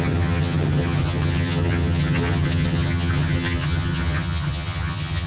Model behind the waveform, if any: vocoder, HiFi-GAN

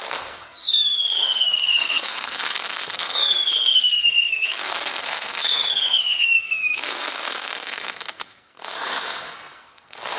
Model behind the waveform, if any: codec, SNAC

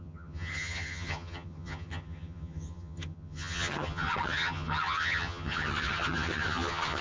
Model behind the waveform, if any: vocoder, HiFi-GAN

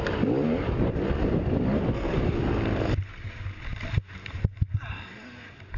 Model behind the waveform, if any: none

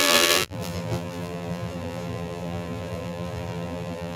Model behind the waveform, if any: vocoder, BigVGAN v2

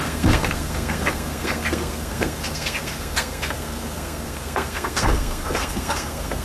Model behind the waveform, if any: codec, SNAC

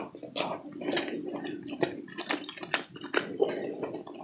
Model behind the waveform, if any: none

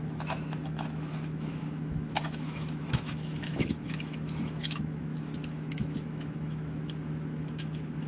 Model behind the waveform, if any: autoencoder, DAC-VAE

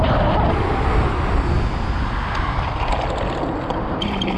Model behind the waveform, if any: none